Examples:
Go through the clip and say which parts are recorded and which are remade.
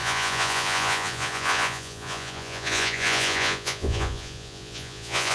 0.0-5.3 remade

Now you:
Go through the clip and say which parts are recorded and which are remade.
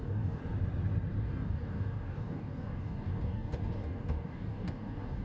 0.0-0.4 remade; 0.4-1.2 recorded; 1.2-5.2 remade